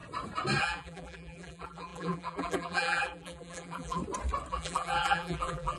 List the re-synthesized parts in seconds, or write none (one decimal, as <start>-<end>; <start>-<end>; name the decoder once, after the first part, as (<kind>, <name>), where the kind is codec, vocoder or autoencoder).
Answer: 0.6-4.0 (vocoder, BigVGAN v2); 4.5-5.8